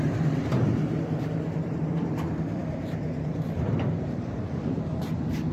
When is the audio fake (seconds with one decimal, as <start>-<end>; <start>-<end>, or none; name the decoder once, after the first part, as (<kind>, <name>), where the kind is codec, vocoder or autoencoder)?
0.0-5.5 (vocoder, BigVGAN v2)